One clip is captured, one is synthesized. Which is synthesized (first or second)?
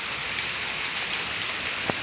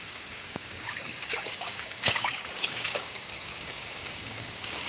second